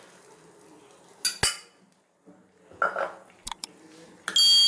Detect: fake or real real